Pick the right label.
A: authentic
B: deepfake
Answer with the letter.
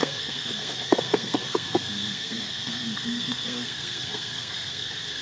B